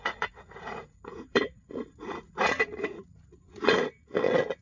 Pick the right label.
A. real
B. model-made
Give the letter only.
B